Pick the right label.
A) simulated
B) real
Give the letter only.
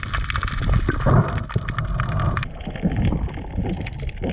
B